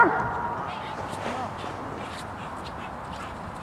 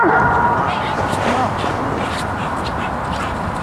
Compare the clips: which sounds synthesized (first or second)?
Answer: second